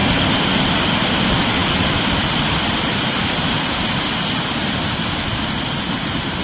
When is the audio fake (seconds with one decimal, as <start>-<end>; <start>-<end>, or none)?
none